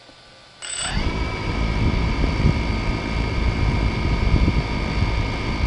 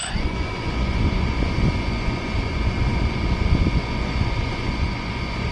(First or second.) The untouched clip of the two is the first